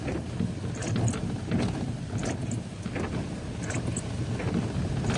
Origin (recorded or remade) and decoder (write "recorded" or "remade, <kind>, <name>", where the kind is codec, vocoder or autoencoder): recorded